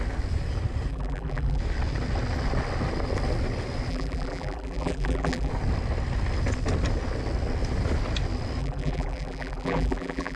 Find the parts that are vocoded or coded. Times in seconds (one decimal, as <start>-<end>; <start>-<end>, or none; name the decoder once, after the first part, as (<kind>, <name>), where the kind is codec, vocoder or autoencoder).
0.9-1.6 (vocoder, BigVGAN v2); 3.9-5.5; 8.6-10.4